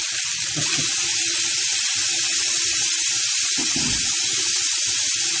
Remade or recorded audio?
recorded